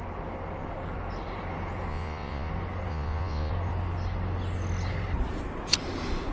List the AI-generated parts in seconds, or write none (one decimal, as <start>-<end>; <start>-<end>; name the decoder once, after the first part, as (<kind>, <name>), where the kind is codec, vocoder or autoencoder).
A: 1.9-2.5 (vocoder, Vocos); 2.9-3.5